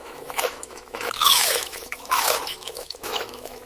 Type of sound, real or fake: fake